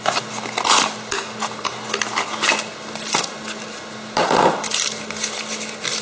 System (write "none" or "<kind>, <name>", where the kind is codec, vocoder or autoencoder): none